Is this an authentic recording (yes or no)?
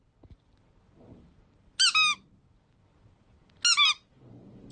yes